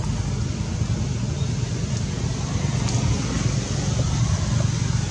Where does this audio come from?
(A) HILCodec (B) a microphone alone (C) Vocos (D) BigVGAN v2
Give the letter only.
B